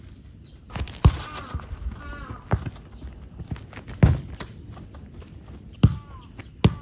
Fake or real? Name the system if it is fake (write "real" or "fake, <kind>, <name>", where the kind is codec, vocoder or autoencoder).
real